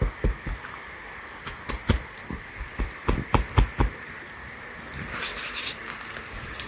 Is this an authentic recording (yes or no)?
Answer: yes